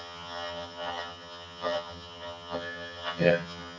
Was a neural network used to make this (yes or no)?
yes